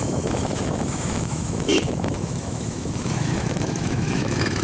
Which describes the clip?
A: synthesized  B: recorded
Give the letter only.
A